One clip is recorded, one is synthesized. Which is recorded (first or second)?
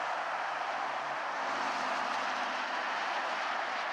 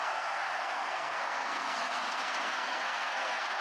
first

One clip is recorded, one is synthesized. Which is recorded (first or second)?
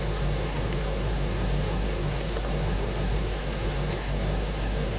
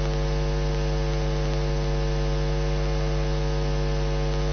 second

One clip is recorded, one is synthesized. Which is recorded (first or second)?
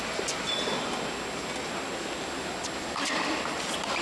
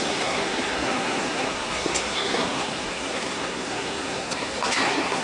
first